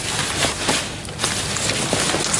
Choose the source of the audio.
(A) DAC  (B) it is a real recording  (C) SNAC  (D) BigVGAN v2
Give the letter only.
B